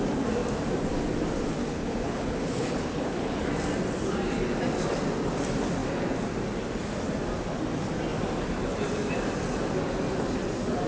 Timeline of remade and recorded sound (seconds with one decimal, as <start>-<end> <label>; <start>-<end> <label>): 0.0-1.6 recorded; 1.6-3.5 remade; 3.5-10.9 recorded